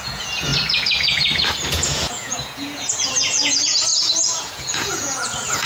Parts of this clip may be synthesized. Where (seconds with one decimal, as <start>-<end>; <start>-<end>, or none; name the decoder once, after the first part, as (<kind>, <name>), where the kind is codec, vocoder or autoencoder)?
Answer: 0.0-0.5 (vocoder, Vocos); 1.7-5.7